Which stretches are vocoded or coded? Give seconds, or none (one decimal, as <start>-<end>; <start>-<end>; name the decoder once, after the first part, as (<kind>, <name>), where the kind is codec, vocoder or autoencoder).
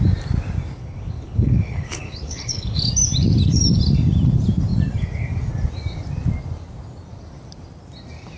0.8-2.9 (codec, HILCodec)